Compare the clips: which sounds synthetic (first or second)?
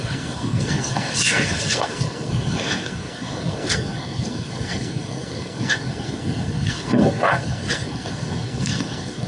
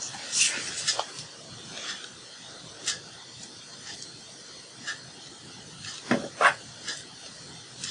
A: first